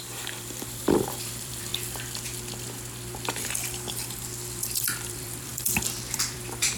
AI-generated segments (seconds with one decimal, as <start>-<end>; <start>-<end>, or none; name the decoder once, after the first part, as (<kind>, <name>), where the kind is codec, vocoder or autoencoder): 0.0-1.7 (vocoder, BigVGAN v2); 3.9-6.8